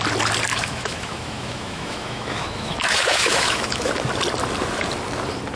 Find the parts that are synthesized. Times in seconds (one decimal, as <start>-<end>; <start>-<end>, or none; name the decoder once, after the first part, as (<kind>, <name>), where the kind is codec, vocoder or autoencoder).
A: 0.5-3.9 (autoencoder, DAC-VAE)